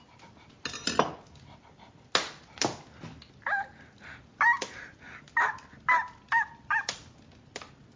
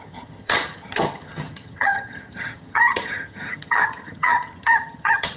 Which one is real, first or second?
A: first